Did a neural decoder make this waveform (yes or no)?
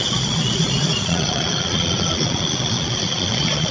yes